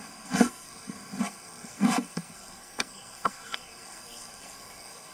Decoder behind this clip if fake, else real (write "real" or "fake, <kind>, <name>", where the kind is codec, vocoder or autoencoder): fake, codec, SNAC